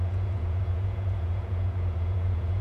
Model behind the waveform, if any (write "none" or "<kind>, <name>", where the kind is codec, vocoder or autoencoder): vocoder, Vocos